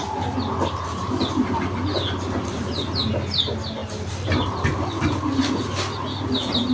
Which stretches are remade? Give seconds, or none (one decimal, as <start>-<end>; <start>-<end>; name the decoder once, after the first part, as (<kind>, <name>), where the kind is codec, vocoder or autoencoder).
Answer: none